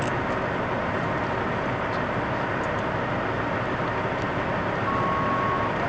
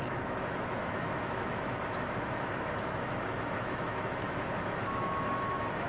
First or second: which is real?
first